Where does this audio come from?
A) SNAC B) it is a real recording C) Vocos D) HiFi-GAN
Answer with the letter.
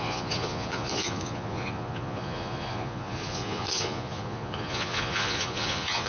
C